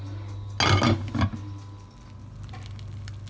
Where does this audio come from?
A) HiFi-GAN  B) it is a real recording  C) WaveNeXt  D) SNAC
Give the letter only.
B